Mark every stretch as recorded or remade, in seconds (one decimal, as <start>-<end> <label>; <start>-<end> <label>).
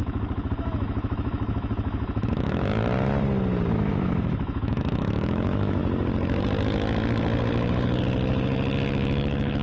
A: 0.0-2.8 remade; 2.8-3.7 recorded; 3.7-5.8 remade; 5.8-8.9 recorded; 8.9-9.6 remade